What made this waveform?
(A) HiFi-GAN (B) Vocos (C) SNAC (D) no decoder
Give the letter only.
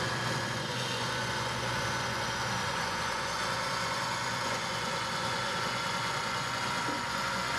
B